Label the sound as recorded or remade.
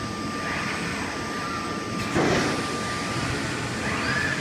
recorded